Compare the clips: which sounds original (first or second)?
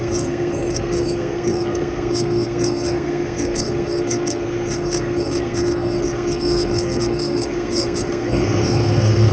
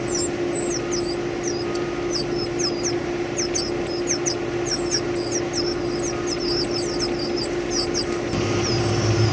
second